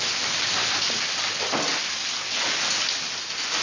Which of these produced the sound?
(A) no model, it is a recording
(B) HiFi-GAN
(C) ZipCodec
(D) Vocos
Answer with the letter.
A